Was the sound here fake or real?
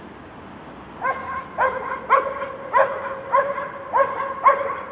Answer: real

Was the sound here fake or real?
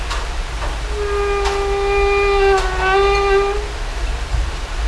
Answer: real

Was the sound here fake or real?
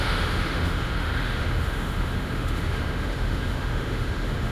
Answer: fake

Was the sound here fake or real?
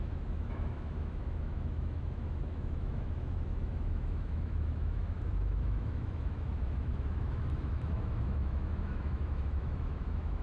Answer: fake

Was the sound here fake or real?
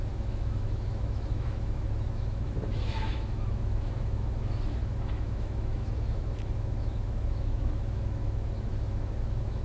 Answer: fake